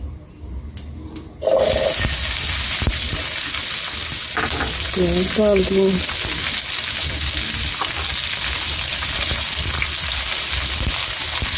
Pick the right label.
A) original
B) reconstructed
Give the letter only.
A